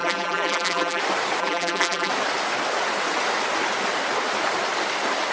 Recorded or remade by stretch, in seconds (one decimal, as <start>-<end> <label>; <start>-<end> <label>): 0.0-1.0 remade; 1.0-1.4 recorded; 1.4-2.1 remade; 2.1-5.3 recorded